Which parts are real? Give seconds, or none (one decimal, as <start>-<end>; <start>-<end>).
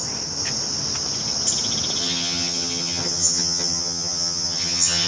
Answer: 0.0-2.0